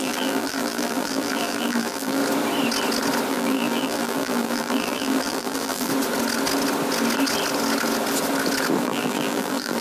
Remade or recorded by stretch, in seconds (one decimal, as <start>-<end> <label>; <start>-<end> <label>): 0.0-2.2 remade; 2.2-3.3 recorded; 3.3-5.9 remade; 5.9-8.8 recorded; 8.8-9.8 remade